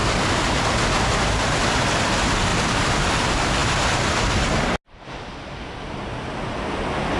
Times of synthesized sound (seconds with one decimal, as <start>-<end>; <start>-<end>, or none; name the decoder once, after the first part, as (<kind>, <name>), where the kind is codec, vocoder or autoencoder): none